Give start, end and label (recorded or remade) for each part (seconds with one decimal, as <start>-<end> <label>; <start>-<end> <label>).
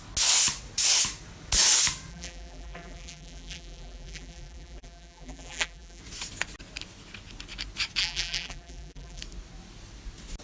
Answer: 0.0-2.1 recorded; 2.1-6.0 remade; 6.0-8.0 recorded; 8.0-9.2 remade; 9.2-10.4 recorded